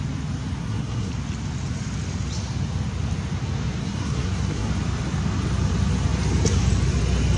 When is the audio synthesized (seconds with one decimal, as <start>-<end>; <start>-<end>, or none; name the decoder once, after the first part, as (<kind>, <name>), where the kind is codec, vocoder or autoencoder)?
0.6-1.1 (codec, SNAC); 3.8-4.7